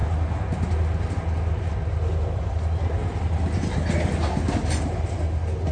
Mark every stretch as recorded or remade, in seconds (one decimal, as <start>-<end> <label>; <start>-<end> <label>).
0.0-5.7 recorded